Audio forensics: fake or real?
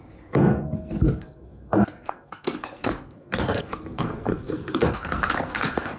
fake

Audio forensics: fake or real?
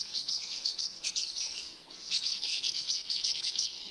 fake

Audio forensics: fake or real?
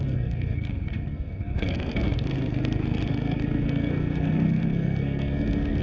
fake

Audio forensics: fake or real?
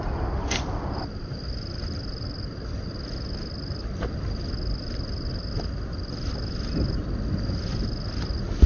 real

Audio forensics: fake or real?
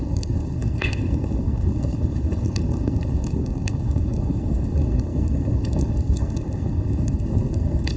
fake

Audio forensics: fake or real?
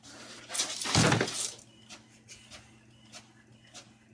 real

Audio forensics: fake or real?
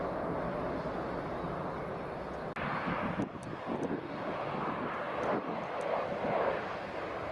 real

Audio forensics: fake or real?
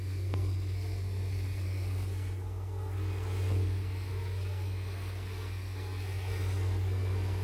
fake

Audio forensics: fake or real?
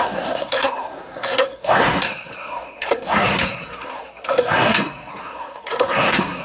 fake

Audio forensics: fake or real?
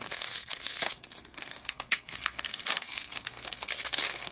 fake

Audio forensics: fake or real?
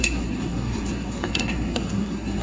fake